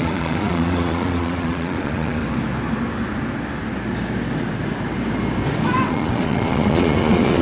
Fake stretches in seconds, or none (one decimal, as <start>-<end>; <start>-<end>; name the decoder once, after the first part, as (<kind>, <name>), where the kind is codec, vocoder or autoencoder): 0.0-2.2 (vocoder, Vocos); 5.9-7.4